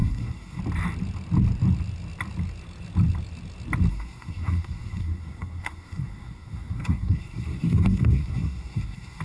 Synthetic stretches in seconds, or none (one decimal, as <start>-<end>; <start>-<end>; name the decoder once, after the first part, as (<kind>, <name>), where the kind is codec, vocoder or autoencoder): 0.0-0.6 (codec, SNAC); 3.9-9.2